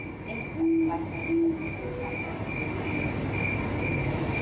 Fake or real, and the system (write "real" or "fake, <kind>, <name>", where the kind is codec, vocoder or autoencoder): real